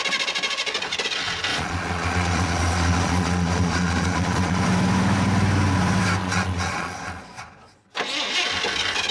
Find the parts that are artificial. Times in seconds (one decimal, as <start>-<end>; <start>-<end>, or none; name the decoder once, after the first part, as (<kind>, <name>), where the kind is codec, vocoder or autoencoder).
1.5-4.6 (vocoder, Vocos); 6.2-7.8